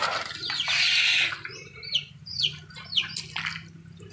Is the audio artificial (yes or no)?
no